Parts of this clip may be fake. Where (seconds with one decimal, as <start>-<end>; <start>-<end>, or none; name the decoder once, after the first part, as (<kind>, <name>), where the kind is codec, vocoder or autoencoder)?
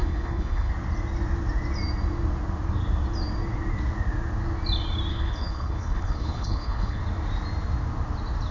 0.0-0.7 (codec, HILCodec); 5.1-7.0